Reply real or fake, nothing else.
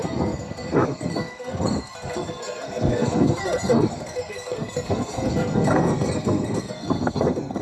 fake